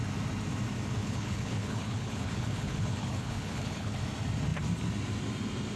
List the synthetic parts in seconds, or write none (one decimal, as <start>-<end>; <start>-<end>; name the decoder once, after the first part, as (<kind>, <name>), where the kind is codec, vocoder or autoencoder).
1.0-4.0 (codec, HILCodec)